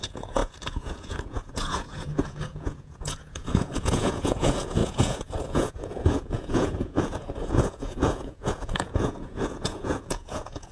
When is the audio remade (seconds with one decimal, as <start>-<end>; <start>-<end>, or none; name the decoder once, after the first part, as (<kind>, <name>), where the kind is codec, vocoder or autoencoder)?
0.0-10.7 (vocoder, Vocos)